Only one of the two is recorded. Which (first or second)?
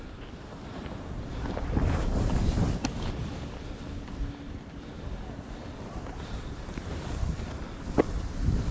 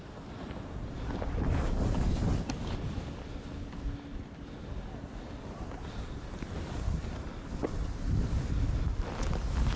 second